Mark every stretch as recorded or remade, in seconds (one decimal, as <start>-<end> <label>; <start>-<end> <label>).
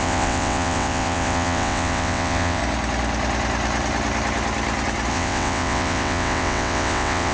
0.0-2.6 remade; 2.6-5.1 recorded; 5.1-7.3 remade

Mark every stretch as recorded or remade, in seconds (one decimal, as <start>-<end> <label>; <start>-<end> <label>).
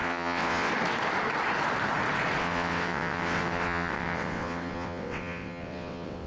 0.0-0.7 remade; 0.7-2.4 recorded; 2.4-6.3 remade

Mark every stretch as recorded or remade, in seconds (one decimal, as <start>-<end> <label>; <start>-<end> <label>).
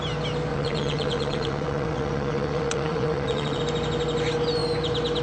0.0-0.5 recorded; 0.5-3.6 remade; 3.6-5.2 recorded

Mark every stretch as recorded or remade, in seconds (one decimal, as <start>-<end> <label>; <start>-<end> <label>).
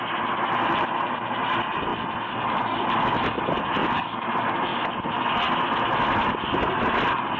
0.0-7.4 recorded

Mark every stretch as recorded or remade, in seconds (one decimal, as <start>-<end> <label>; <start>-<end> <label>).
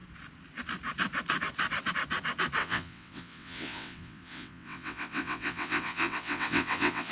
0.0-2.6 recorded; 2.6-7.1 remade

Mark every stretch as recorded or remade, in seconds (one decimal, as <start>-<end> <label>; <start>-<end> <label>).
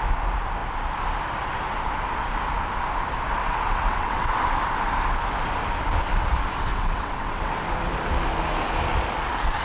0.0-3.4 recorded; 3.4-4.3 remade; 4.3-6.7 recorded; 6.7-7.5 remade; 7.5-9.6 recorded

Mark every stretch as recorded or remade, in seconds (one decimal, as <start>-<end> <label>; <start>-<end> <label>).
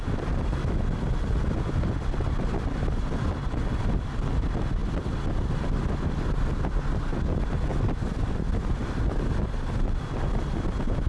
0.0-11.1 recorded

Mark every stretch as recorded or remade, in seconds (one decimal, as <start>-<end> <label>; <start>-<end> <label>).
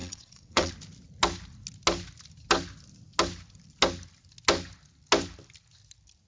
0.0-0.7 remade; 0.7-6.3 recorded